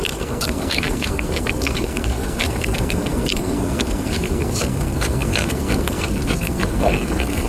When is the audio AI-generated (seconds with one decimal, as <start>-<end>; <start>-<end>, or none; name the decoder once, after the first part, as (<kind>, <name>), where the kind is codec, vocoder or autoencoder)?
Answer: 0.0-7.5 (codec, SNAC)